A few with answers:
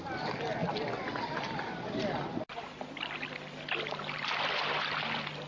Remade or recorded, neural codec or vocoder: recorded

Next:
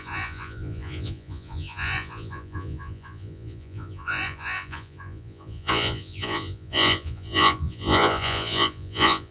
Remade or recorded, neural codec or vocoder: remade, vocoder, Vocos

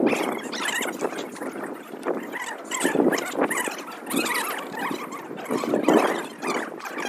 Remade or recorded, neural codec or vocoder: recorded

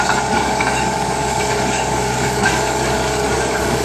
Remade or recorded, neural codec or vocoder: remade, codec, DAC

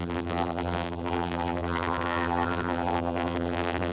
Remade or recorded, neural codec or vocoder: remade, vocoder, BigVGAN v2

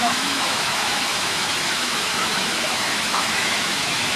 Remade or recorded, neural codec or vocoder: remade, autoencoder, DAC-VAE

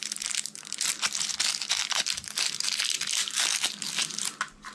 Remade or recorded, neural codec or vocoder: recorded